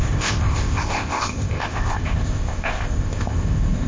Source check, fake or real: fake